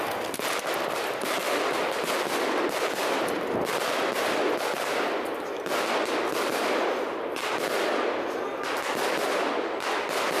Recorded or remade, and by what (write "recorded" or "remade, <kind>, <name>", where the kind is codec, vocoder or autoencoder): recorded